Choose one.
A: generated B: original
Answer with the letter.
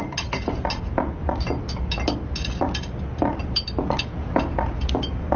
B